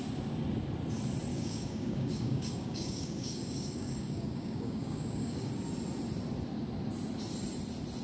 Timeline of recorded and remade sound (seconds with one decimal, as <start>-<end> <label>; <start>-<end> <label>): 0.0-1.3 recorded; 1.3-5.5 remade; 5.5-8.0 recorded